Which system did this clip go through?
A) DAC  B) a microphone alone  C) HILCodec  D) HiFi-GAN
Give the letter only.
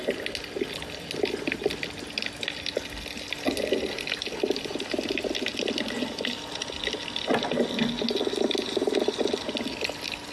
B